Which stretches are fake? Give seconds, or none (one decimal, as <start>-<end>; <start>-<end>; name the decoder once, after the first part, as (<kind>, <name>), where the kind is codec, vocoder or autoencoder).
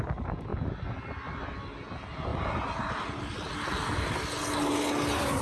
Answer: none